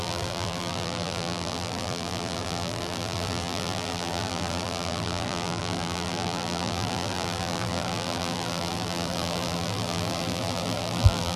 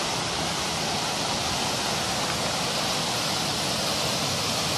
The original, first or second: second